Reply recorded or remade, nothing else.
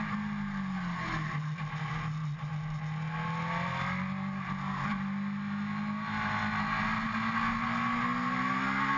recorded